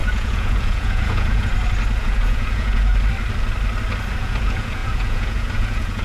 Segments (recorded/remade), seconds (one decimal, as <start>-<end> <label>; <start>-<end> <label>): 0.0-1.5 remade; 1.5-2.0 recorded; 2.0-2.9 remade; 2.9-4.2 recorded; 4.2-6.0 remade